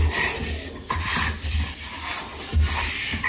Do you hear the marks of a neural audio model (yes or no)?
no